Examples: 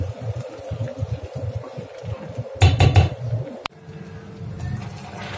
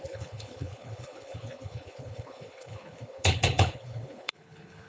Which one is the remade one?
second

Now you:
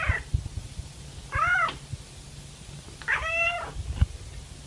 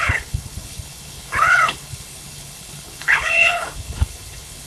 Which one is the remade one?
second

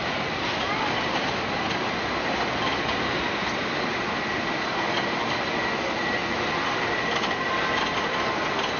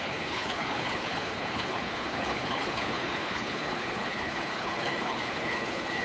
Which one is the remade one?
second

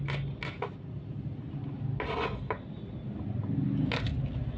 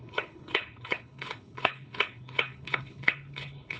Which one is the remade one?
second